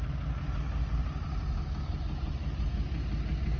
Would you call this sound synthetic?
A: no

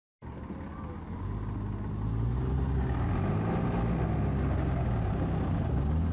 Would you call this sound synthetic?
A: no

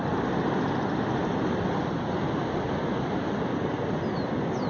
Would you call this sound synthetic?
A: no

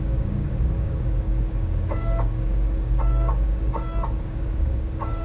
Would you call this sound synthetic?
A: yes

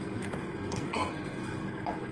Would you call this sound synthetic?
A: yes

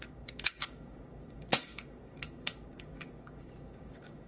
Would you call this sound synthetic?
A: yes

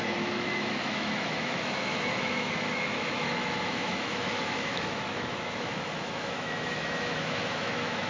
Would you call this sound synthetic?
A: yes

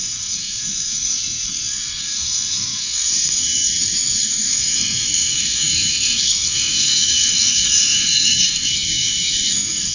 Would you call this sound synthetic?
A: yes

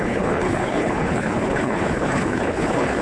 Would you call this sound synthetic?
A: yes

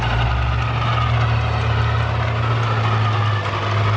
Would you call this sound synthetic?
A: no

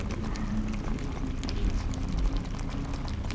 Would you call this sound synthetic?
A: no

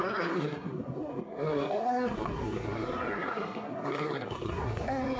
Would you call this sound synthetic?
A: yes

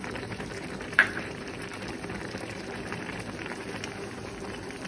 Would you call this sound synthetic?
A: yes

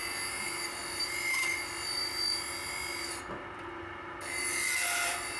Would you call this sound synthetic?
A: no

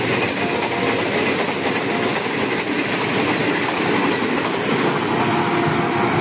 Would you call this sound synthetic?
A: no